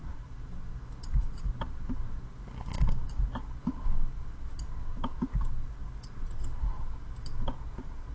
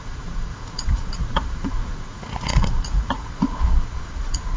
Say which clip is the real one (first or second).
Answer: first